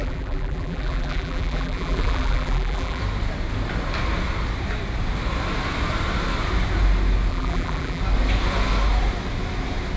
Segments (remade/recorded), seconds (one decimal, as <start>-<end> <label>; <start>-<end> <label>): 0.0-3.0 remade; 3.0-7.3 recorded; 7.3-8.0 remade; 8.0-10.0 recorded